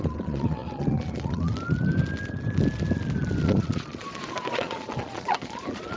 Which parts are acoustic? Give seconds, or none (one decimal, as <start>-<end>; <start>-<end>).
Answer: 1.5-3.4